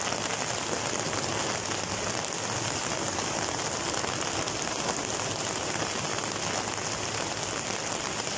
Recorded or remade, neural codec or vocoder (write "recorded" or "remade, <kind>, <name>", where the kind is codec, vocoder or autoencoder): recorded